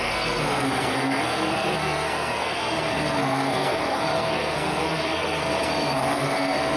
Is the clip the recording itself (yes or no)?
no